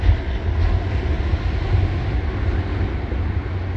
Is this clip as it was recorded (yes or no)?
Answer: yes